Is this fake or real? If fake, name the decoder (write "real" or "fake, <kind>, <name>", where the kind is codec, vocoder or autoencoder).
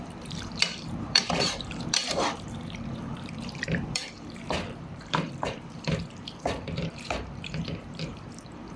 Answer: fake, vocoder, BigVGAN v2